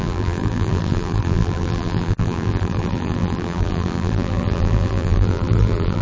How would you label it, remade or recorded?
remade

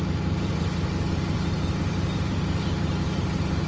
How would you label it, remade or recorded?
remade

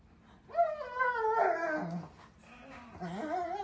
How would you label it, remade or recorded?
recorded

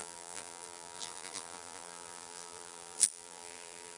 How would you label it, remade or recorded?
remade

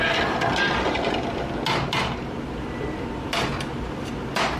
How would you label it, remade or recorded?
recorded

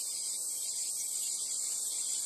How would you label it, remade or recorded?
remade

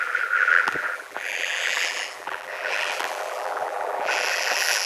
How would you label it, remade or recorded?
remade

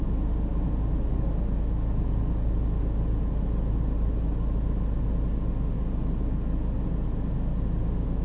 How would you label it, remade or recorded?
recorded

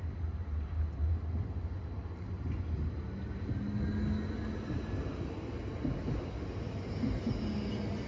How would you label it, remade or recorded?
recorded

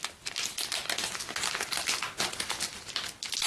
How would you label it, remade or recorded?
recorded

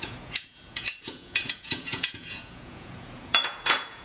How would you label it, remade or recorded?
remade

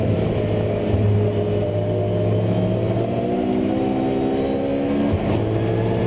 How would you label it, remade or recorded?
recorded